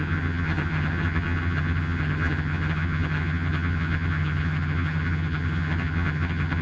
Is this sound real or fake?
fake